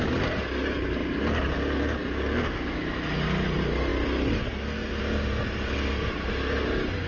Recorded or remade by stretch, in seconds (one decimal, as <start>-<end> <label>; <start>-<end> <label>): 0.0-7.1 recorded